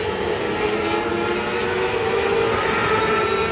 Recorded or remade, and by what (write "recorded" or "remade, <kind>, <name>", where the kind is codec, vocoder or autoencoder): recorded